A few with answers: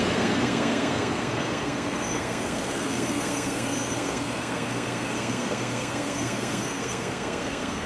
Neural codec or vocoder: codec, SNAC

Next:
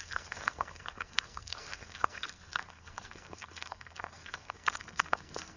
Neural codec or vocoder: codec, SNAC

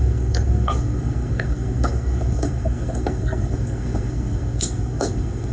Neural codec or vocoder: codec, SNAC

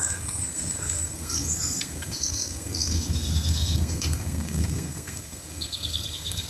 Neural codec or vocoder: codec, SNAC